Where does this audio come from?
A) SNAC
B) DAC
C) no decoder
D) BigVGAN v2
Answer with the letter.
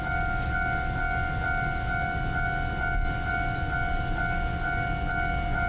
C